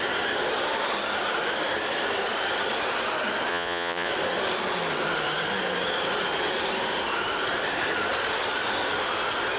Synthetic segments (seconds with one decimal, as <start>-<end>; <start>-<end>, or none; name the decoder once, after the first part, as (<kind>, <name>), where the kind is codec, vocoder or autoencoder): 3.5-4.1 (vocoder, Vocos)